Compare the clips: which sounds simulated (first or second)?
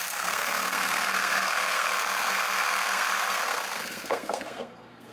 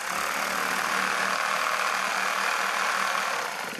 first